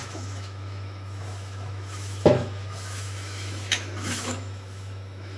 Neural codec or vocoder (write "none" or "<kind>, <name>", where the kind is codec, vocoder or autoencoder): autoencoder, DAC-VAE